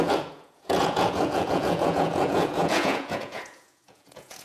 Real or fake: fake